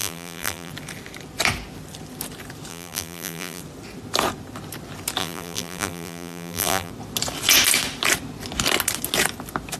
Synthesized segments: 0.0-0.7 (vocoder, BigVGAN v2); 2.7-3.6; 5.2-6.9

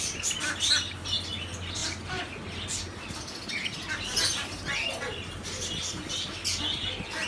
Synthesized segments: none

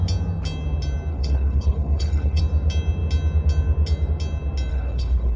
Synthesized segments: 1.1-2.4 (codec, HILCodec); 4.7-5.4

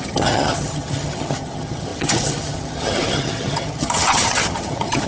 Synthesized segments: 0.0-5.1 (vocoder, HiFi-GAN)